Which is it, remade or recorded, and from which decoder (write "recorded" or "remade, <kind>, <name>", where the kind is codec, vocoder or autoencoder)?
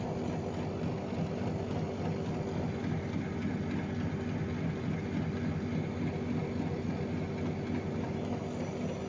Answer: recorded